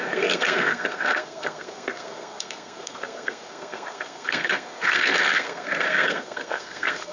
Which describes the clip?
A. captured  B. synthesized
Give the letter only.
B